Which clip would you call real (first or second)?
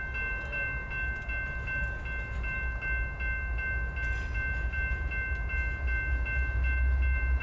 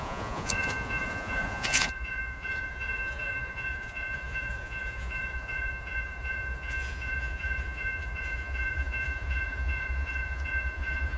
first